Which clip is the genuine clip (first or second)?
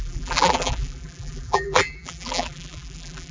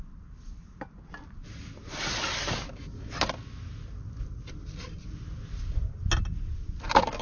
second